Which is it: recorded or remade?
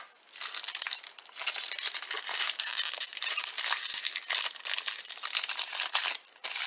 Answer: recorded